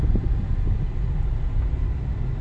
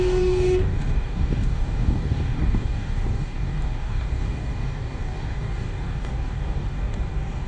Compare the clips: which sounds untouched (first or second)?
first